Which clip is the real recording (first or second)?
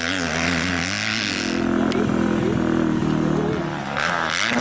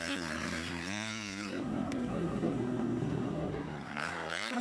first